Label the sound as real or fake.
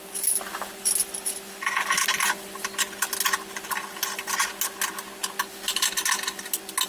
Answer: real